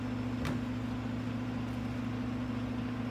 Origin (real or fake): real